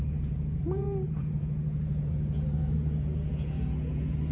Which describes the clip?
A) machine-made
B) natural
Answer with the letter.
A